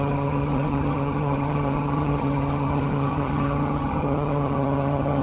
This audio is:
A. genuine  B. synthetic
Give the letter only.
B